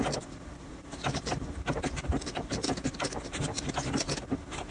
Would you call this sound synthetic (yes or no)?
yes